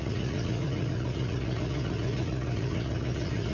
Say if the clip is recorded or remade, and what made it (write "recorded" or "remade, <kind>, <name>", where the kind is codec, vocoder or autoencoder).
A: remade, vocoder, Vocos